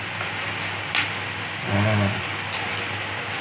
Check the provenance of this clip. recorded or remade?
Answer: recorded